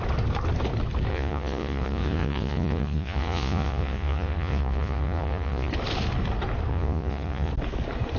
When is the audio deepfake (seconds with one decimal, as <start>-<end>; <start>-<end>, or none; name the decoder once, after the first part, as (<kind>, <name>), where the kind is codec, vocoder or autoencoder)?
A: 1.1-5.7 (vocoder, Vocos); 6.7-7.5